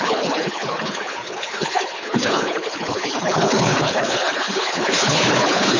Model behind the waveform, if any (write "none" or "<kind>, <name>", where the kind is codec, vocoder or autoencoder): codec, HILCodec